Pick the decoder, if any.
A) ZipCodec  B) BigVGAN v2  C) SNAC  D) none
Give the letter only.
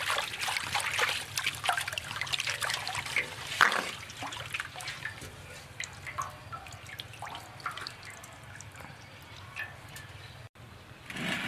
D